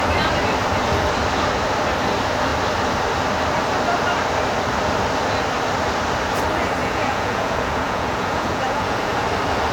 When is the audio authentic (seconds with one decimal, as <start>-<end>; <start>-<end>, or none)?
0.0-6.8; 9.2-9.7